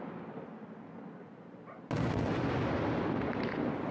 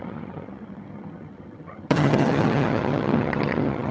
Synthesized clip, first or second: second